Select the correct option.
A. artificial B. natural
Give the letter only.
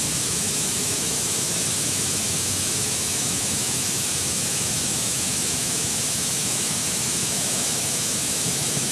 A